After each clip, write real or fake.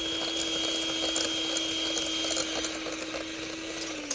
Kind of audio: real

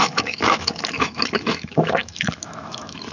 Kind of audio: fake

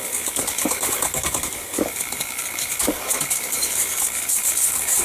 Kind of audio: fake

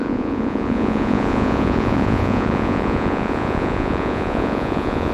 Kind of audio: fake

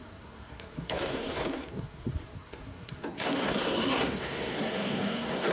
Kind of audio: fake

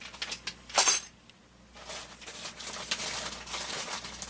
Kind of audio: real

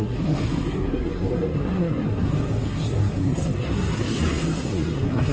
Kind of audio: fake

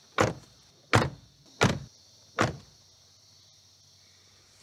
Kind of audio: real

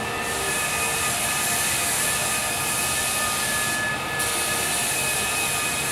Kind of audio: real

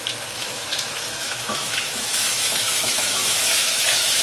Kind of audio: fake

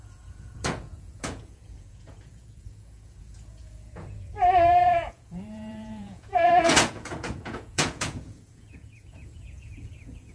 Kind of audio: fake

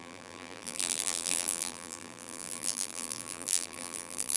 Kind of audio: fake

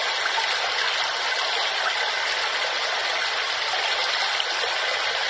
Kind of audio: real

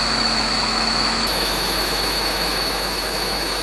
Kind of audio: fake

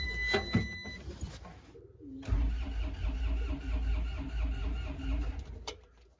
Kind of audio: real